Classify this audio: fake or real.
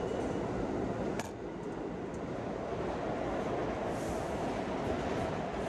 real